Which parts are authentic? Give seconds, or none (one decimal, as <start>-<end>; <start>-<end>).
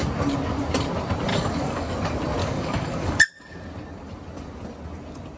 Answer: 0.0-1.3; 1.9-2.4; 3.2-5.4